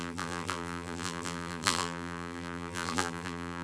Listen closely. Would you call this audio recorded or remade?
remade